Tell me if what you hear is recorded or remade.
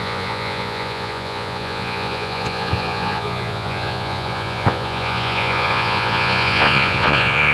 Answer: remade